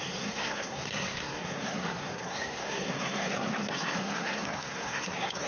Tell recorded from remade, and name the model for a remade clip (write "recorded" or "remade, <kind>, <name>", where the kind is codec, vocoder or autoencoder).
remade, codec, SNAC